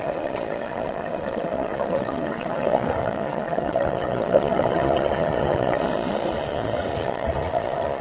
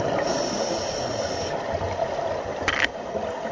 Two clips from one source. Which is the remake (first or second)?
first